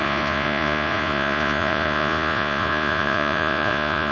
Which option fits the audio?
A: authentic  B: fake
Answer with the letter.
B